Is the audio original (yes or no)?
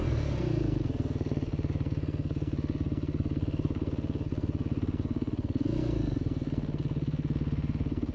no